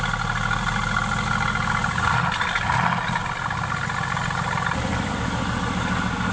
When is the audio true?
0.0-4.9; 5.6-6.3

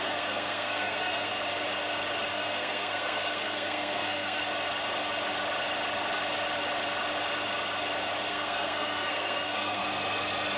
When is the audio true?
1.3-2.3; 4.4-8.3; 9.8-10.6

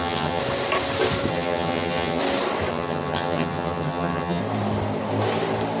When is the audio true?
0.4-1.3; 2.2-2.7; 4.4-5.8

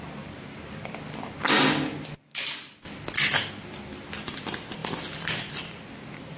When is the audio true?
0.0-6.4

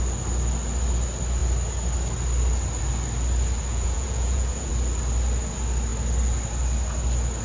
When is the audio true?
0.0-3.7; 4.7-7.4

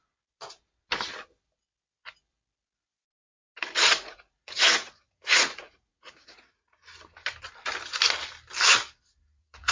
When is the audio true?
0.0-3.9; 6.8-9.0

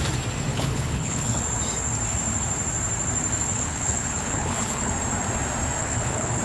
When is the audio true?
0.0-0.5; 1.4-3.5; 4.9-5.8